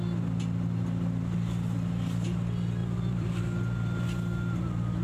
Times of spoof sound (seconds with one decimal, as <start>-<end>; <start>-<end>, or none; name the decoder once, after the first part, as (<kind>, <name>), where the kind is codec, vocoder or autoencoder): 2.8-3.4 (vocoder, BigVGAN v2)